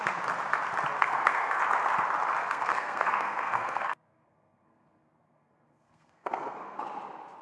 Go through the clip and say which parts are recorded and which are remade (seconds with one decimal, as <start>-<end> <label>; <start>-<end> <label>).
0.0-1.0 recorded; 1.0-1.6 remade; 1.6-2.4 recorded; 2.4-6.8 remade; 6.8-7.4 recorded